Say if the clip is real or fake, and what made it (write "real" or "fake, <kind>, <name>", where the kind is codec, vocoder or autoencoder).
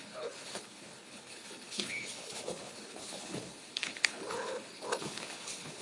fake, codec, HILCodec